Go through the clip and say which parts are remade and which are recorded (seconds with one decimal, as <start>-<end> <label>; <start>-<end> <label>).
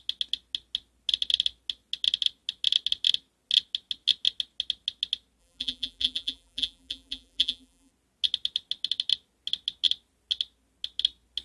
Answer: 0.0-5.4 recorded; 5.4-7.9 remade; 7.9-11.4 recorded